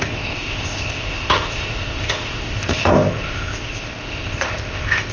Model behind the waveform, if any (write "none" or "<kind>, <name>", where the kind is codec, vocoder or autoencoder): codec, ZipCodec